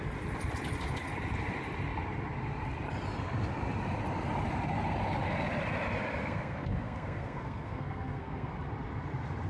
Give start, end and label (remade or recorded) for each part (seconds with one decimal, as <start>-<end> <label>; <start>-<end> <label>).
0.0-6.2 recorded; 6.2-8.5 remade; 8.5-9.5 recorded